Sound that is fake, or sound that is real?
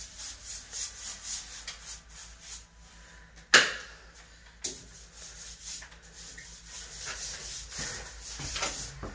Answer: real